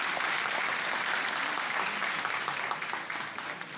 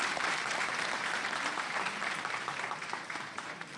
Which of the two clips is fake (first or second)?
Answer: second